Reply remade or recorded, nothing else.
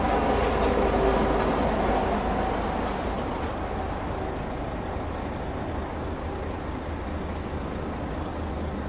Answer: recorded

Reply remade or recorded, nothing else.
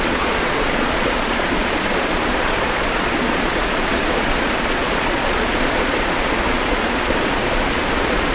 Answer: remade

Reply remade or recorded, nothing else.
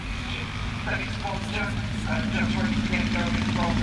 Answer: recorded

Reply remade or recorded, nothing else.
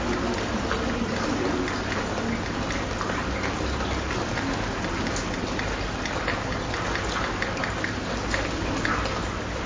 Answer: recorded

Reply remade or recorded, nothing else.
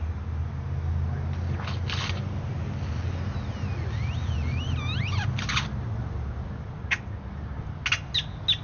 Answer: recorded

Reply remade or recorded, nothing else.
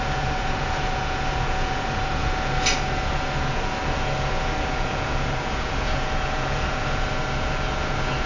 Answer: remade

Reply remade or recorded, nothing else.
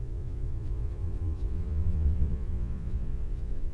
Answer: remade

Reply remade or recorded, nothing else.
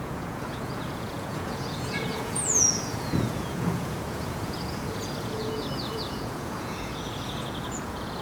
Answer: remade